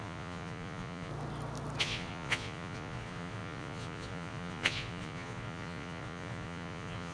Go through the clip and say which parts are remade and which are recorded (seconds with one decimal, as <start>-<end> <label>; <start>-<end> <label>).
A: 0.0-1.1 remade; 1.1-1.8 recorded; 1.8-7.1 remade